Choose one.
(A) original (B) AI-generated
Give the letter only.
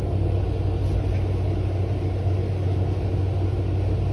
A